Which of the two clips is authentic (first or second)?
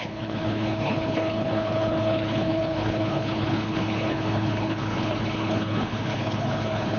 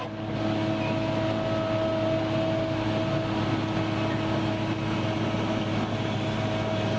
second